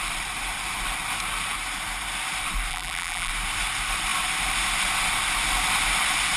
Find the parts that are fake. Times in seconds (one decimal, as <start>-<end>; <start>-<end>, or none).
2.7-3.3

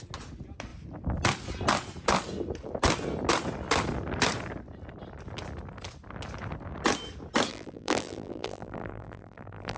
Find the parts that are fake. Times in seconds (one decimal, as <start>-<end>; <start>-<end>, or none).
7.5-9.8

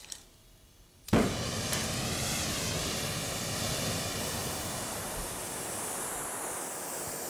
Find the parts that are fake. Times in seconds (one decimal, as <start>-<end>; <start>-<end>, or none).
4.4-5.1